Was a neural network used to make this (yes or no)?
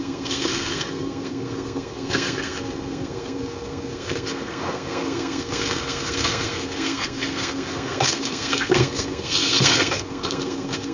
yes